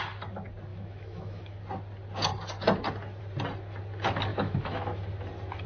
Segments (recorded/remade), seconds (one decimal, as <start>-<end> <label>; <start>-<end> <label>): 0.0-0.7 recorded; 0.7-1.6 remade; 1.6-4.3 recorded; 4.3-5.0 remade; 5.0-5.7 recorded